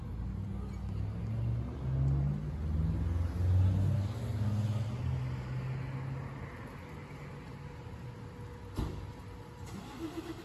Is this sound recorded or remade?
recorded